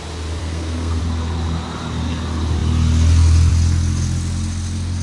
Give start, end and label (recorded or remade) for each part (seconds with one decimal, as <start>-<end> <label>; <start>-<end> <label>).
0.0-0.4 recorded; 0.4-1.0 remade; 1.0-5.0 recorded